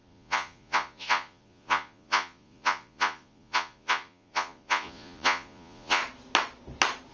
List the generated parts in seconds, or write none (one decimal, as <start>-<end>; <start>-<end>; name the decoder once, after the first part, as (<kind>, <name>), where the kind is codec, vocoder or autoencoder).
0.0-6.0 (vocoder, Vocos)